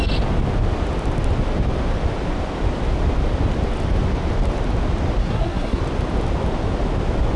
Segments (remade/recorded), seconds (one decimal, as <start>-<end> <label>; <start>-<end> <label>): 0.0-5.2 recorded; 5.2-5.8 remade; 5.8-7.4 recorded